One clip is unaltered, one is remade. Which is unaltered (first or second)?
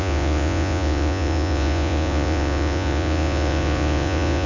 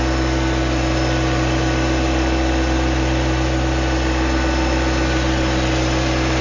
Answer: second